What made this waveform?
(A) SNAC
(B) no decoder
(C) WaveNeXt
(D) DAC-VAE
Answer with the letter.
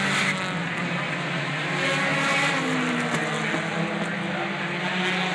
B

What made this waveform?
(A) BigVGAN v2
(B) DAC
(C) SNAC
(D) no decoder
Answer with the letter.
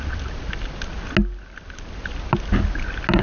D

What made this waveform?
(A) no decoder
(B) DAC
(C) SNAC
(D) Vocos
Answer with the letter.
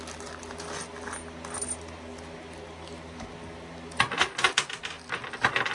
A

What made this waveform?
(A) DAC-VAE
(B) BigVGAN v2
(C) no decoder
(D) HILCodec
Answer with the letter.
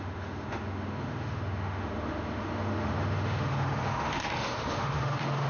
A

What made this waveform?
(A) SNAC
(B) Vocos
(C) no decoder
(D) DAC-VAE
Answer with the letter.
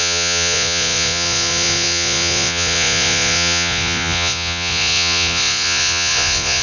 B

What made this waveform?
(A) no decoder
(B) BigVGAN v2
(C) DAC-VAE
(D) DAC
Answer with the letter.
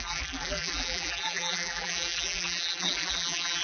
B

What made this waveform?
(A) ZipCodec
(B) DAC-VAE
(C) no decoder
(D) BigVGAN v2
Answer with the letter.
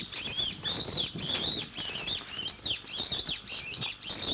C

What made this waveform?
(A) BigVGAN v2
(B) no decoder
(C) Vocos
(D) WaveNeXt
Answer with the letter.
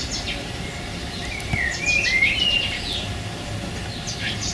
B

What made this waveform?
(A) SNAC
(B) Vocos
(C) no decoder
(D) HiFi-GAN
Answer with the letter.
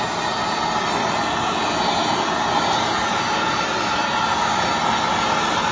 C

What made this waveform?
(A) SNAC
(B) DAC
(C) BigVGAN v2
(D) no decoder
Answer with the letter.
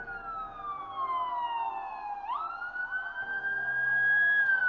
D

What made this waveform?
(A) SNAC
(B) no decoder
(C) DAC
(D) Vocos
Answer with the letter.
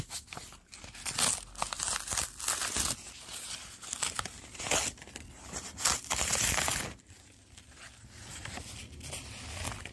B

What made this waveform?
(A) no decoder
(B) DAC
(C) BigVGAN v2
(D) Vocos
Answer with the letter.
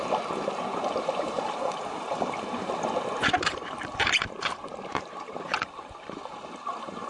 C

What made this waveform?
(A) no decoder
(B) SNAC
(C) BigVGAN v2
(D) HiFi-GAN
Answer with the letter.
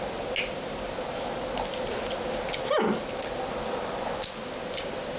A